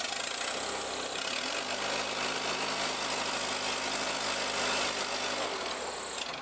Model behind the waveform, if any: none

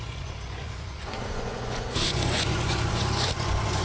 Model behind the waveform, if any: vocoder, Vocos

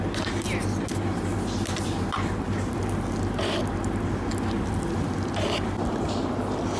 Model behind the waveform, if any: none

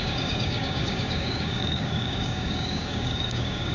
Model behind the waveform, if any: codec, DAC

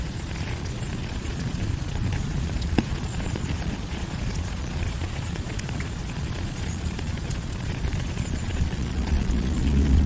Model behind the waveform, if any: vocoder, Vocos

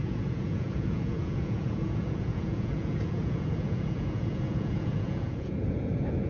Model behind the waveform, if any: vocoder, Vocos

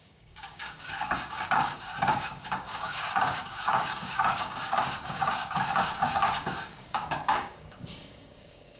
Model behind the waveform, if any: codec, DAC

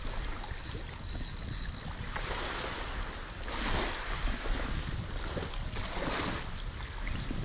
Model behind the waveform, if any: none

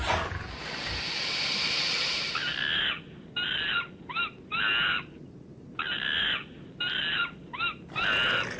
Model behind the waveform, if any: none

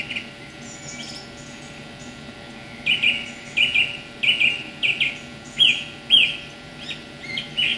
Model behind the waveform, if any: none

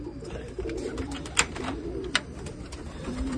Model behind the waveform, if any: none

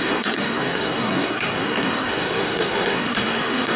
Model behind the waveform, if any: codec, SNAC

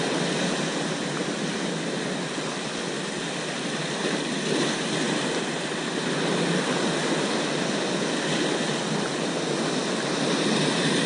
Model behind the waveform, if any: none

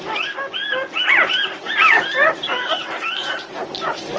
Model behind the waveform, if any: none